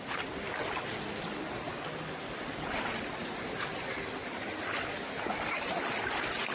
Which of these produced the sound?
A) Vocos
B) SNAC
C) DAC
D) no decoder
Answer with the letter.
D